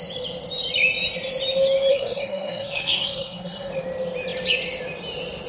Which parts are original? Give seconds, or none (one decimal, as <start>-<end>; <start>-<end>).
0.0-1.9; 3.7-5.5